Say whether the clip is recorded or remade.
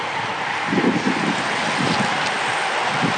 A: recorded